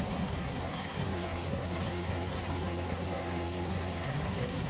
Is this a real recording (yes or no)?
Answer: no